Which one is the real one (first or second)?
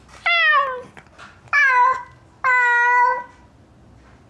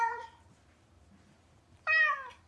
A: first